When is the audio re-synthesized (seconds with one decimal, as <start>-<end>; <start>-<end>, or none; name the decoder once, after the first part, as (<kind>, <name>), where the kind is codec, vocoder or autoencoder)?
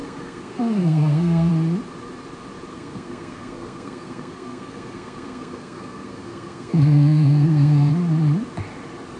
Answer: 0.0-1.5 (codec, SNAC); 2.7-7.9